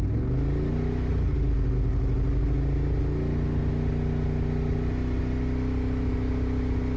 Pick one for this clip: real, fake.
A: real